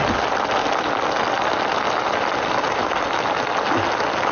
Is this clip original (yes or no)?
yes